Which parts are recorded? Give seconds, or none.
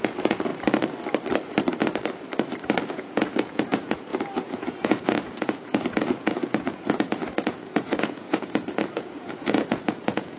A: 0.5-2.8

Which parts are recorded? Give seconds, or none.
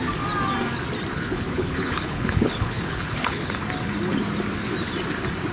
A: 0.0-1.1; 3.5-5.5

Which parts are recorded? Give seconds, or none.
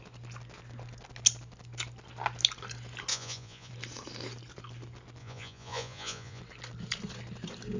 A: 0.0-3.1; 3.7-5.2; 6.4-7.8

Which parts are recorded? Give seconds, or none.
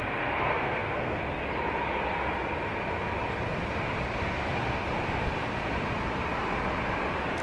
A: 0.0-0.5; 1.2-7.4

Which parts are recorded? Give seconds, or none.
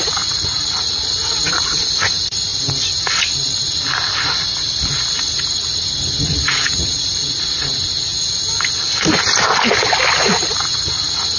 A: 2.5-5.1; 8.1-10.1